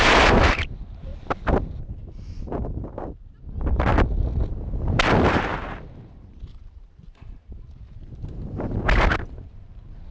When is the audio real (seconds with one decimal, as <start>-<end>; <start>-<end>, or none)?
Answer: 1.1-2.4; 3.9-5.1